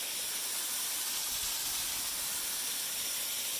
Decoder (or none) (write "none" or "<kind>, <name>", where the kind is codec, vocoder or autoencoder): none